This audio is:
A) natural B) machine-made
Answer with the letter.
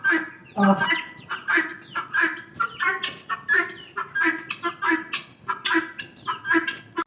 A